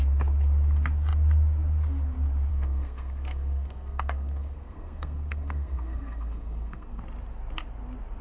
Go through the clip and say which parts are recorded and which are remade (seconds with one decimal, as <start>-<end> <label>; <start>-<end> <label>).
0.0-2.5 recorded; 2.5-7.0 remade; 7.0-8.2 recorded